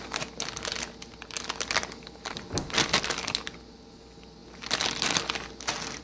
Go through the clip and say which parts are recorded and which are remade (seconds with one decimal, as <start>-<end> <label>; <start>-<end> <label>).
0.0-6.0 recorded